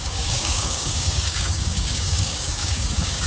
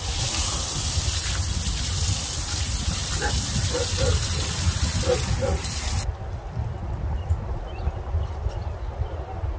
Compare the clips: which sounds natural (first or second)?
second